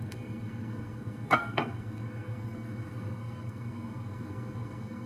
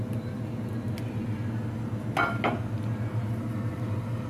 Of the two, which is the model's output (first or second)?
first